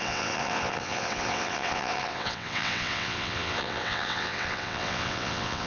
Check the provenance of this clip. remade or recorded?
remade